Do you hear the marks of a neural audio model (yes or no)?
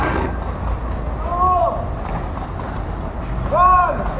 no